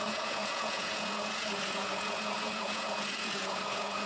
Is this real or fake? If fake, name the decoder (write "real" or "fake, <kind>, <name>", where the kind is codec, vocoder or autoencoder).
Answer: fake, vocoder, Vocos